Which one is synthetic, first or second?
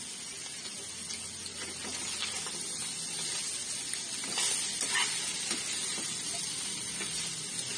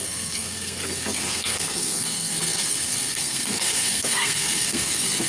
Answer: second